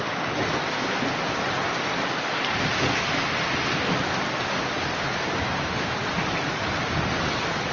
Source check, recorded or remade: recorded